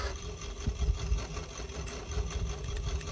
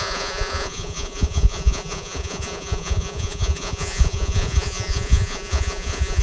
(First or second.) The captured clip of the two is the first